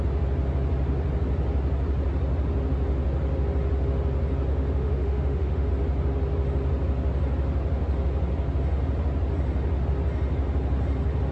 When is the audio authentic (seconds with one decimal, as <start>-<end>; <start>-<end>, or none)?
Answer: 0.0-4.5; 5.7-11.3